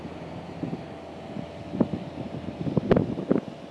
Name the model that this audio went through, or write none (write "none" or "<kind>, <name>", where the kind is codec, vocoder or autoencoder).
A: none